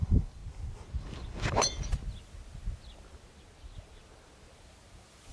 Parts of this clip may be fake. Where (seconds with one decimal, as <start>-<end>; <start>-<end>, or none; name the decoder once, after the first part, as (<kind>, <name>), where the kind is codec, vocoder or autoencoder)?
0.0-0.4 (vocoder, BigVGAN v2); 1.0-1.9